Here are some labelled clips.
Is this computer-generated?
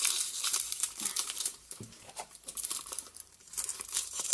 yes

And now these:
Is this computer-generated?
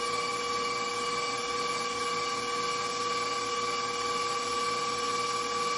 no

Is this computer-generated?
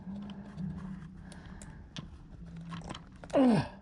no